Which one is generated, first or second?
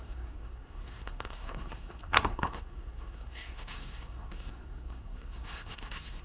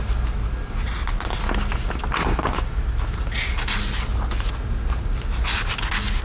first